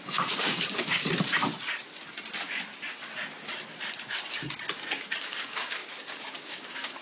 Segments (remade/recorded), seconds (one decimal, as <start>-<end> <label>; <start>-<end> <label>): 0.0-1.0 remade; 1.0-5.2 recorded; 5.2-7.0 remade